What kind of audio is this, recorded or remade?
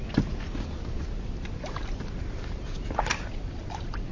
recorded